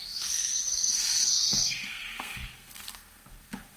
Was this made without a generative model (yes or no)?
no